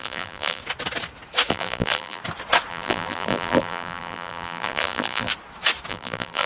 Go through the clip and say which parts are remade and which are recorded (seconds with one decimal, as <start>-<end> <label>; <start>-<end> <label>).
0.0-0.6 remade; 0.6-1.5 recorded; 1.5-2.2 remade; 2.2-2.7 recorded; 2.7-5.3 remade; 5.3-5.9 recorded; 5.9-6.5 remade